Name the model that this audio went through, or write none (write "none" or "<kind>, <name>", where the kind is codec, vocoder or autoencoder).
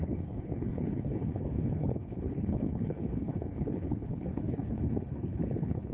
codec, HILCodec